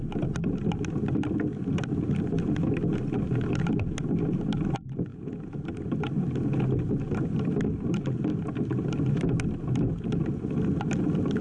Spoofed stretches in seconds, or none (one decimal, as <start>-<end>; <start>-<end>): 5.1-5.6